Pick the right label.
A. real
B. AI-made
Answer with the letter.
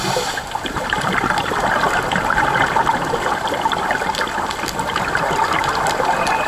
B